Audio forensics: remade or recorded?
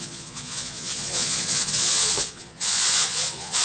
remade